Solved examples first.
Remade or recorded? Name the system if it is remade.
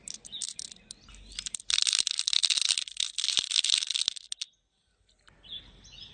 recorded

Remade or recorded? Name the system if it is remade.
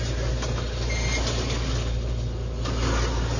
recorded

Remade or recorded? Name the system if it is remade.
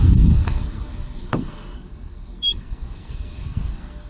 remade, codec, SNAC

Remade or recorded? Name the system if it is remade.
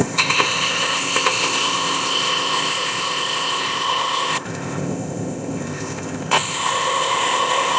remade, codec, ZipCodec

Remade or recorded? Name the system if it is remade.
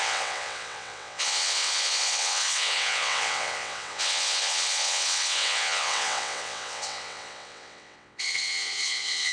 remade, vocoder, WaveNeXt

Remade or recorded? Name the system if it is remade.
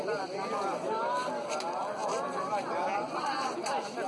recorded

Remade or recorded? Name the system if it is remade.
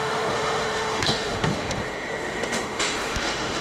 remade, autoencoder, DAC-VAE